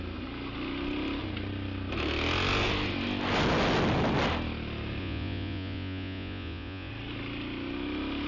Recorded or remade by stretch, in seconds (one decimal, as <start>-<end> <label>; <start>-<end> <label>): 0.0-5.0 recorded; 5.0-6.9 remade; 6.9-8.3 recorded